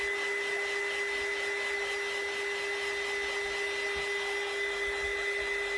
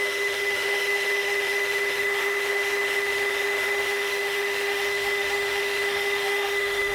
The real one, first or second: first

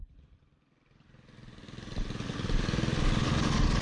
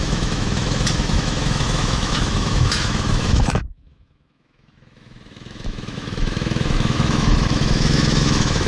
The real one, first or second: first